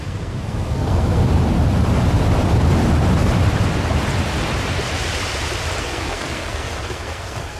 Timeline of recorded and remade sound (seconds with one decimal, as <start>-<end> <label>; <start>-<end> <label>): 0.0-1.2 remade; 1.2-5.8 recorded; 5.8-7.6 remade